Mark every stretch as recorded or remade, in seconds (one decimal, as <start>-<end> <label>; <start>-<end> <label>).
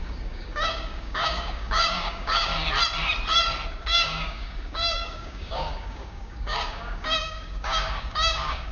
0.0-2.5 remade; 2.5-3.8 recorded; 3.8-8.7 remade